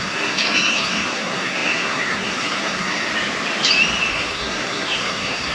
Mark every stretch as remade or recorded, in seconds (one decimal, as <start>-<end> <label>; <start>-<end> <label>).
0.0-3.1 remade; 3.1-4.1 recorded; 4.1-5.5 remade